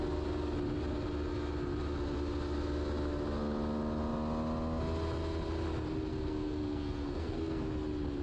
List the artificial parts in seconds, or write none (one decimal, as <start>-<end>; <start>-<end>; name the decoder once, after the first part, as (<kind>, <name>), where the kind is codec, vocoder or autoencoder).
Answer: 6.1-7.6 (codec, SNAC)